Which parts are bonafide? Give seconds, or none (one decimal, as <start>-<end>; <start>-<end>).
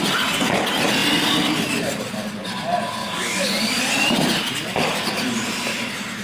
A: 0.0-3.0; 3.8-6.2